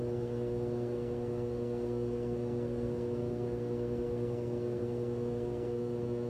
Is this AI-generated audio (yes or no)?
yes